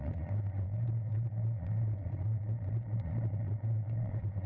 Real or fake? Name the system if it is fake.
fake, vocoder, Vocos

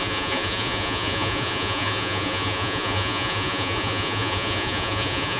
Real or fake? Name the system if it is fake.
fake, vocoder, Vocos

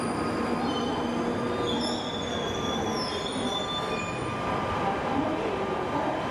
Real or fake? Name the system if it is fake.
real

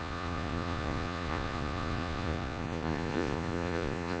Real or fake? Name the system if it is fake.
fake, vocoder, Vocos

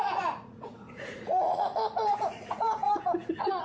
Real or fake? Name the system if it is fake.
fake, vocoder, Vocos